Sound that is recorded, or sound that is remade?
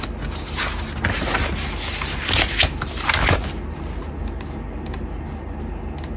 recorded